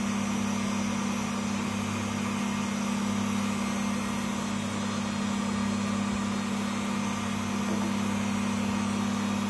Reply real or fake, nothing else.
real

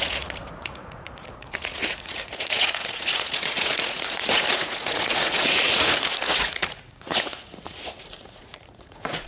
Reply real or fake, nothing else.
fake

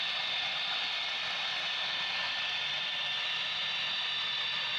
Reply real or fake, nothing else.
real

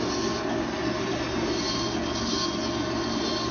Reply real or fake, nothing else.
real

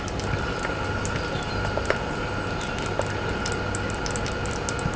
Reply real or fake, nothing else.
real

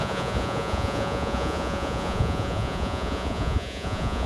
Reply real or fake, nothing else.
fake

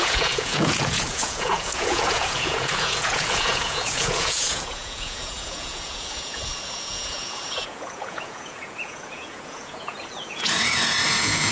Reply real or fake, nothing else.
fake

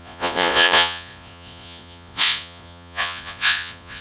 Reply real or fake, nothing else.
fake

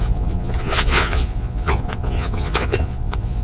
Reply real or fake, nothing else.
fake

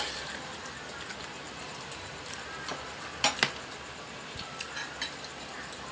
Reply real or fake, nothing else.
real